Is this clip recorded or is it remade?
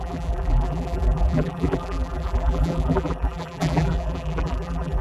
remade